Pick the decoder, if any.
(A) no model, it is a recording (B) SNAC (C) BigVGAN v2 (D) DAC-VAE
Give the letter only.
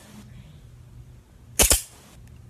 A